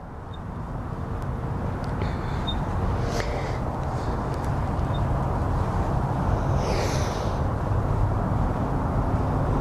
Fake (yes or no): no